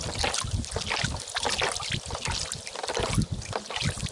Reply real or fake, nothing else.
real